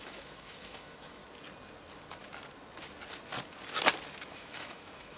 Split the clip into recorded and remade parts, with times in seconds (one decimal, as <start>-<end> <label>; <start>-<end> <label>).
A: 0.0-1.2 remade; 1.2-4.3 recorded; 4.3-5.2 remade